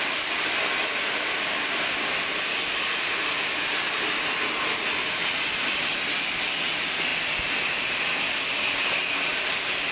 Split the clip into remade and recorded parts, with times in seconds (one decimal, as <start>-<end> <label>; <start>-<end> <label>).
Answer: 0.0-9.9 recorded